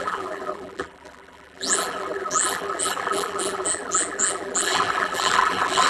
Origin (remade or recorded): remade